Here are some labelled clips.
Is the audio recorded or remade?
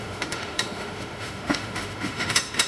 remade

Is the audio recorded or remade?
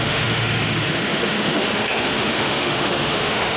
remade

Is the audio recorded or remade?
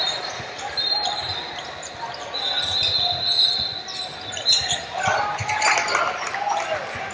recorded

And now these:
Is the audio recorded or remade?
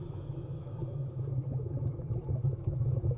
remade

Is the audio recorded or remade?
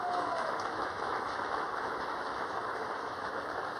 remade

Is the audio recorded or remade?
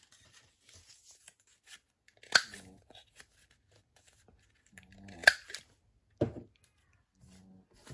recorded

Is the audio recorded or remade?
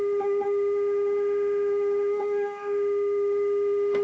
remade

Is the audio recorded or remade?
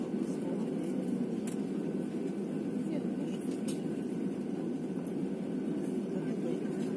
recorded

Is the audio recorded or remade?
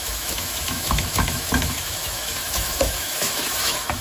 remade